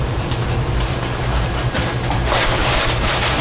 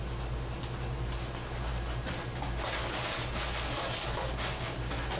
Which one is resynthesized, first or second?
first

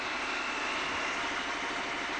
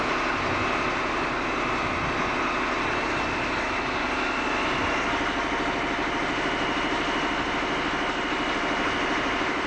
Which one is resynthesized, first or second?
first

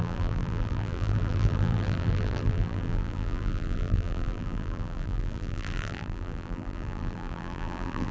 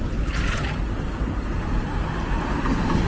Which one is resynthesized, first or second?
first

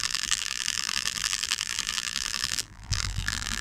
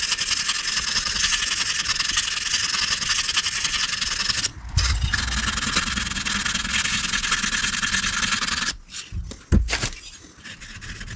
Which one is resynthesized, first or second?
first